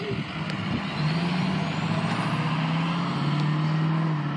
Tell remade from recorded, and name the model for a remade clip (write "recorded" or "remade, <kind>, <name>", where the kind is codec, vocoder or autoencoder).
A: recorded